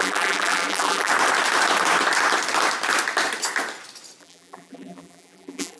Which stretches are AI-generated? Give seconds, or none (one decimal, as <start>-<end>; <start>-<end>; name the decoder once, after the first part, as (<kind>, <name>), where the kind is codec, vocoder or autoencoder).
0.0-1.1 (vocoder, BigVGAN v2); 4.2-5.8